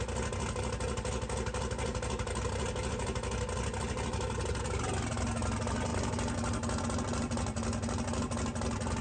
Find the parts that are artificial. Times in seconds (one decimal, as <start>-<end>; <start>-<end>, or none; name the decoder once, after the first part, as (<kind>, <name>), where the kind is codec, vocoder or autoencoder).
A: none